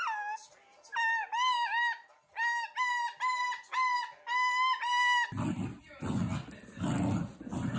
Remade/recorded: recorded